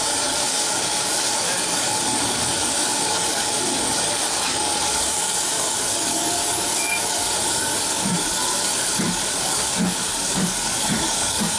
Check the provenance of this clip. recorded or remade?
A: remade